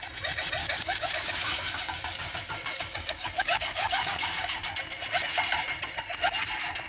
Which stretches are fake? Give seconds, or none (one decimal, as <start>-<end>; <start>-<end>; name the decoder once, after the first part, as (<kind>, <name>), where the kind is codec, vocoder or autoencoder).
0.6-4.7 (codec, DAC)

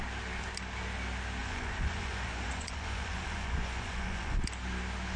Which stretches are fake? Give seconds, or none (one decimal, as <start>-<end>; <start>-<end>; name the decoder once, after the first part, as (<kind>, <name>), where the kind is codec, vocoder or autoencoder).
1.4-4.4 (vocoder, Vocos)

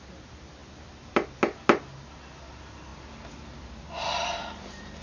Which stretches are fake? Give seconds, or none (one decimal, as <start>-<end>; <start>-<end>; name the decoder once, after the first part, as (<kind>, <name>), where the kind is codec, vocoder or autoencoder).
none

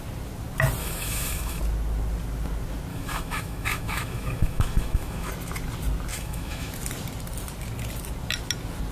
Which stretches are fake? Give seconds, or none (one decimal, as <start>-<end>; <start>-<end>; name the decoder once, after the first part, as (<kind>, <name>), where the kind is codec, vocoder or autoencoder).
0.8-1.6 (autoencoder, DAC-VAE); 2.9-5.3; 6.1-6.7

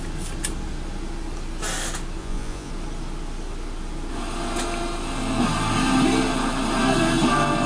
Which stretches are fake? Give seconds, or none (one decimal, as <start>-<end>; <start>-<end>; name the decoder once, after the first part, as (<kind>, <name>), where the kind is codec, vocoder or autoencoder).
2.2-2.7 (vocoder, Vocos)

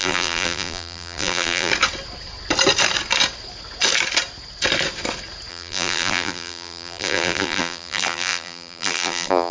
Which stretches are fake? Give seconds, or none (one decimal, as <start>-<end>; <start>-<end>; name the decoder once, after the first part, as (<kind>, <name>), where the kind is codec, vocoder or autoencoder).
0.0-1.7 (vocoder, BigVGAN v2); 5.5-9.5

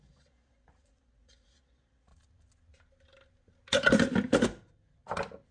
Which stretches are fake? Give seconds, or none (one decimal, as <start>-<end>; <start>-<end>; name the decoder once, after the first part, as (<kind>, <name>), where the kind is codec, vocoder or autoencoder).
0.0-2.1 (vocoder, Vocos)

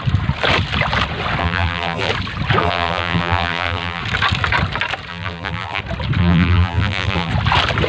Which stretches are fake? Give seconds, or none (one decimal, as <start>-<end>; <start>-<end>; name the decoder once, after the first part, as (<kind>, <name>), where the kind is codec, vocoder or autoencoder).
1.4-2.1 (vocoder, BigVGAN v2); 2.6-4.0; 5.1-5.8; 6.2-7.3